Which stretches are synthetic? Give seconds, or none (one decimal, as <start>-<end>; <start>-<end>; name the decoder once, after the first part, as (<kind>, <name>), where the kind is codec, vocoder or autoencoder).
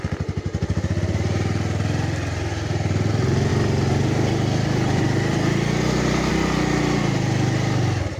2.5-3.1 (vocoder, BigVGAN v2); 3.5-6.3